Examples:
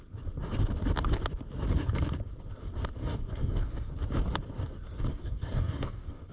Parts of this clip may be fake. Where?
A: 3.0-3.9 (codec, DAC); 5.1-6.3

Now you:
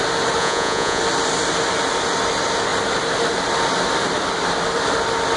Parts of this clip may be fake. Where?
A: 0.4-1.0 (vocoder, Vocos)

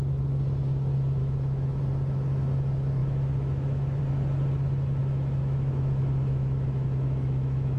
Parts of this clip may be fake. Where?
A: 1.2-1.8 (autoencoder, DAC-VAE); 3.0-4.0; 5.0-7.8

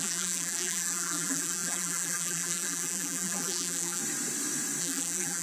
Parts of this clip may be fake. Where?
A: 0.0-4.0 (vocoder, BigVGAN v2); 4.8-5.4

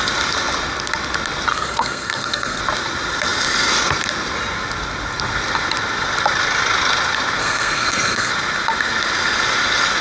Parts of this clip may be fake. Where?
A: 1.5-2.6 (codec, SNAC); 7.4-8.3

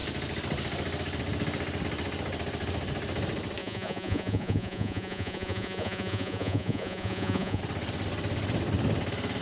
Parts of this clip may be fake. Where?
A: 3.6-7.6 (vocoder, Vocos)

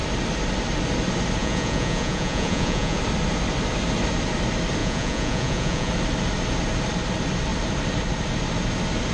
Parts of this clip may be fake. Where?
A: 1.4-3.0 (vocoder, Vocos); 4.8-5.9

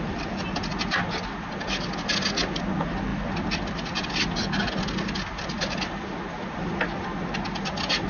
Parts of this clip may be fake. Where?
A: none